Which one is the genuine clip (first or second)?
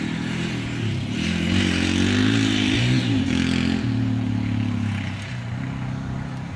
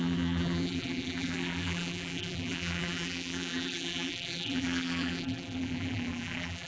first